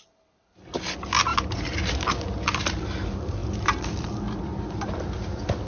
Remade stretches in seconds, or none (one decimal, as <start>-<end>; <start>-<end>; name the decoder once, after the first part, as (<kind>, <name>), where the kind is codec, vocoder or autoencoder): none